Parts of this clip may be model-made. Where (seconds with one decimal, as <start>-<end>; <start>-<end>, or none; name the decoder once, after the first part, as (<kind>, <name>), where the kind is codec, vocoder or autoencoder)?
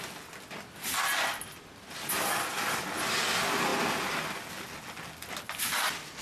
none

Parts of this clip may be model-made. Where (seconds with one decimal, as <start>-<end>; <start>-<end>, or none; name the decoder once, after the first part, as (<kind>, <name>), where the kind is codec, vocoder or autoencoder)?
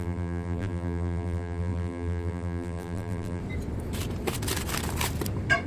0.0-3.4 (vocoder, BigVGAN v2)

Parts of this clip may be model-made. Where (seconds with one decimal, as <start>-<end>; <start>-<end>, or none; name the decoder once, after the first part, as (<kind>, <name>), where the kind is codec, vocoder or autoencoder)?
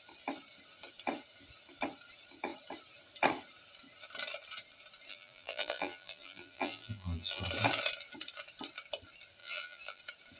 5.1-7.4 (vocoder, BigVGAN v2); 9.4-10.0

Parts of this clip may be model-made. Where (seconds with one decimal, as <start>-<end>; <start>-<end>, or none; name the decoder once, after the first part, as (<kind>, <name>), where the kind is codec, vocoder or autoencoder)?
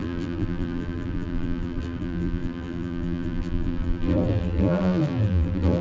0.0-5.8 (vocoder, BigVGAN v2)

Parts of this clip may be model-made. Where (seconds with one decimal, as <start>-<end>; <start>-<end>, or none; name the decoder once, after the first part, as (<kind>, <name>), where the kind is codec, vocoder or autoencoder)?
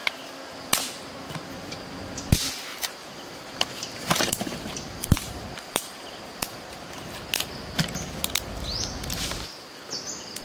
2.7-6.8 (vocoder, BigVGAN v2)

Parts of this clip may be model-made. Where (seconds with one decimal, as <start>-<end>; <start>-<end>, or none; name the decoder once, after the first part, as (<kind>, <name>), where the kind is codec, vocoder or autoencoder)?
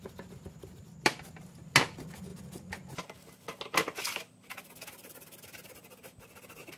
none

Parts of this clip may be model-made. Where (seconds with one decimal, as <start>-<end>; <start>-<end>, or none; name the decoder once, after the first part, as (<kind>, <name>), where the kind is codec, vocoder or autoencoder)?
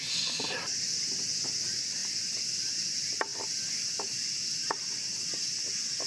none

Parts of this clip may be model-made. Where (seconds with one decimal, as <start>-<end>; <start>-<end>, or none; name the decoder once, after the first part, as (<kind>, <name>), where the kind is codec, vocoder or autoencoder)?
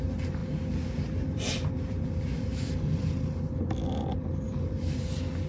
none